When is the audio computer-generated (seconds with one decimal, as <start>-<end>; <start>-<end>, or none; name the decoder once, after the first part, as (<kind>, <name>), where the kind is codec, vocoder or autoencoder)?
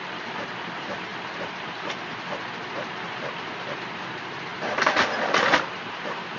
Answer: 4.5-5.3 (vocoder, BigVGAN v2)